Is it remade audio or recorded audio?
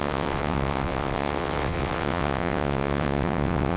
remade